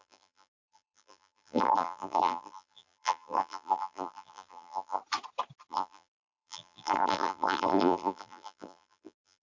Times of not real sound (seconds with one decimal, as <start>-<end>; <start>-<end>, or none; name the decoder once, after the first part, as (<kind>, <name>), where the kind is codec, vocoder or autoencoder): 0.0-5.0 (vocoder, BigVGAN v2); 5.7-9.4